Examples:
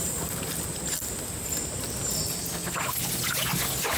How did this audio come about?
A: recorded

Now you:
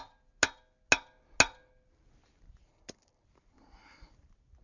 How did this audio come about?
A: recorded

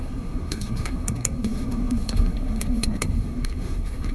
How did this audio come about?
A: remade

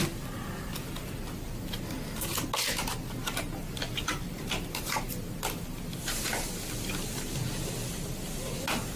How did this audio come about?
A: recorded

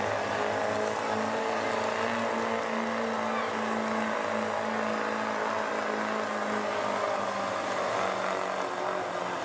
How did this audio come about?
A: recorded